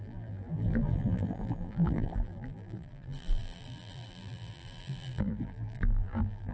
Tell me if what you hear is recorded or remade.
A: remade